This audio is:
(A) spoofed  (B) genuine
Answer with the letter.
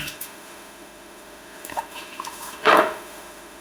A